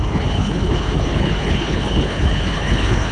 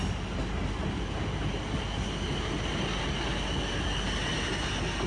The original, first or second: second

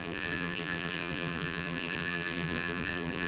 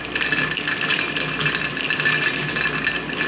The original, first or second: second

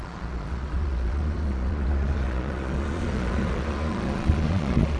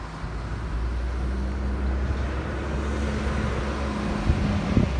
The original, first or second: second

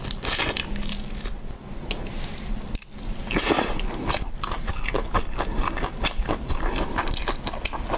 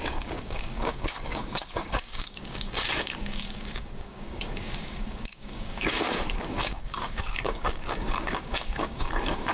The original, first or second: first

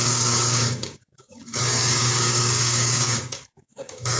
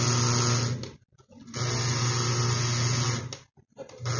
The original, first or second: second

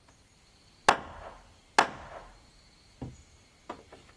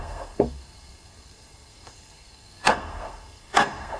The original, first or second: first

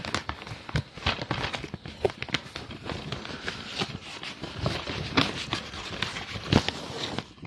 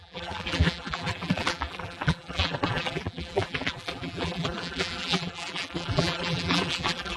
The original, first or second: first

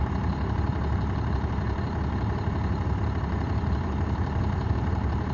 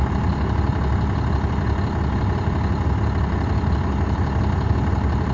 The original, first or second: second